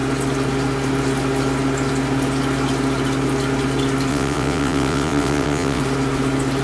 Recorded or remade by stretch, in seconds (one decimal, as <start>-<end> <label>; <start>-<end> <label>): 0.0-4.1 recorded; 4.1-5.8 remade; 5.8-6.6 recorded